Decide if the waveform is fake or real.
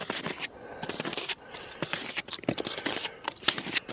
real